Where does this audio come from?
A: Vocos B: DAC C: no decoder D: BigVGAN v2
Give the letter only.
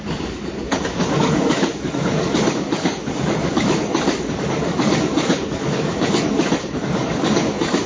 B